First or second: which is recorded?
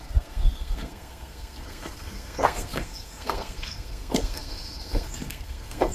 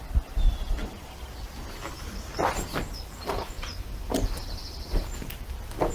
second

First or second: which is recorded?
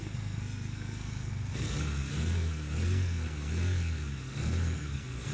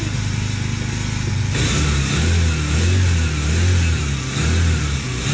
second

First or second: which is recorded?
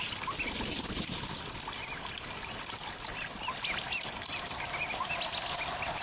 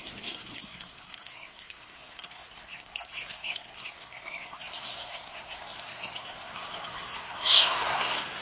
first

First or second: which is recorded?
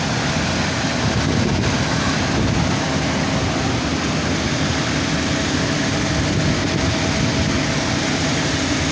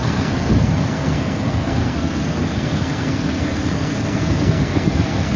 first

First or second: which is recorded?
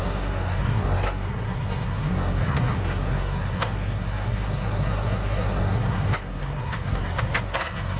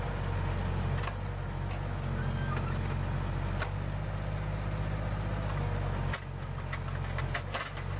second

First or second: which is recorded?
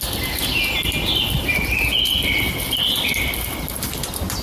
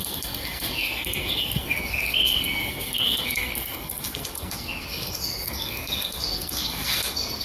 first